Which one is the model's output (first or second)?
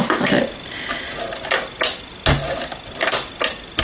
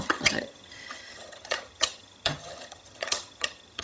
second